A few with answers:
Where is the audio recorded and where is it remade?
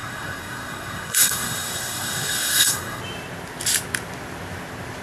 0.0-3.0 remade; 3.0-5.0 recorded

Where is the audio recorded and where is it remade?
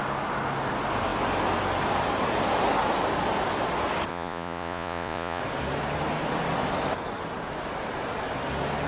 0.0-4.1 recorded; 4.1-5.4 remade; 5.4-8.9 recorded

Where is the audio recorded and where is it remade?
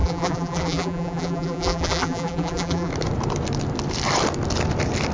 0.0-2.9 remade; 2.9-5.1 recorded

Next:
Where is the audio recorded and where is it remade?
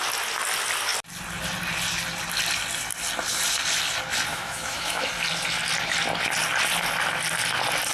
0.0-4.3 recorded; 4.3-5.1 remade; 5.1-7.9 recorded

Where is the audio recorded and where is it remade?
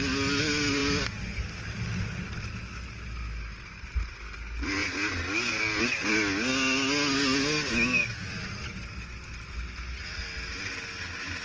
0.0-11.4 recorded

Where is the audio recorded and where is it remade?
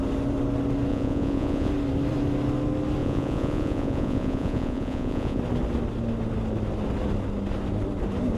0.0-0.9 recorded; 0.9-1.7 remade; 1.7-3.0 recorded; 3.0-5.4 remade; 5.4-8.4 recorded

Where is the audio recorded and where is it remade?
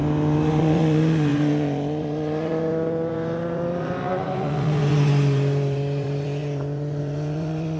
0.0-0.6 recorded; 0.6-7.8 remade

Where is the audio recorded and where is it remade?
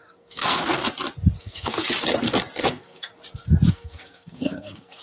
0.0-0.8 remade; 0.8-1.4 recorded; 1.4-1.8 remade; 1.8-2.7 recorded; 2.7-3.1 remade; 3.1-3.7 recorded; 3.7-5.0 remade